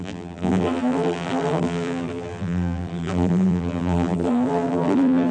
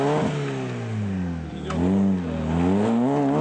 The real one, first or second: second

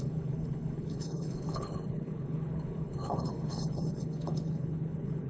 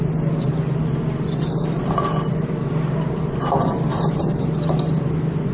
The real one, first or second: second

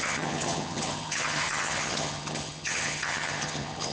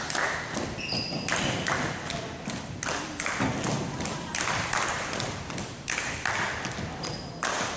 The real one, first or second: second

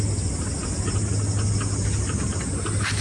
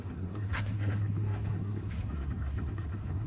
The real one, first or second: first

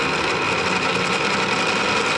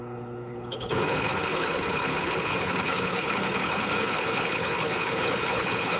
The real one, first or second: first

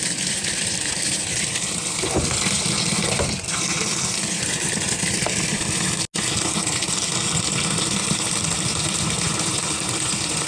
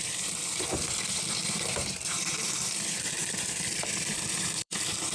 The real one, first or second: first